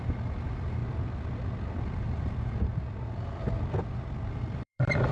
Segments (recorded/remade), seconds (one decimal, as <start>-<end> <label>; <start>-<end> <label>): 0.0-0.8 remade; 0.8-1.8 recorded; 1.8-2.7 remade; 2.7-4.3 recorded; 4.3-5.1 remade